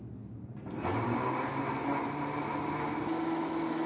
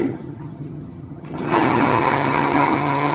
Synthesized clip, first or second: second